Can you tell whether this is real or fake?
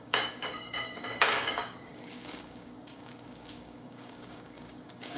fake